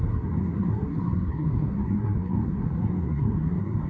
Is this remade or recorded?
remade